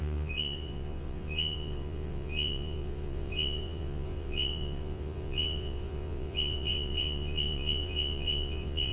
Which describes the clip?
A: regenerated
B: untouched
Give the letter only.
A